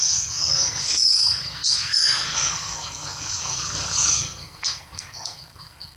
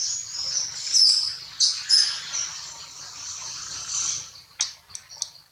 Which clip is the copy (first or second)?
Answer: first